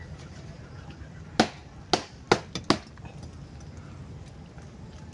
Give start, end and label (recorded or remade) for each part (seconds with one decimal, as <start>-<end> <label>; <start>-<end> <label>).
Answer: 0.0-5.1 recorded